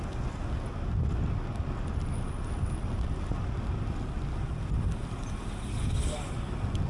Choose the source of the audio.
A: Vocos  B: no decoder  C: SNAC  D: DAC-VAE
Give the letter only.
B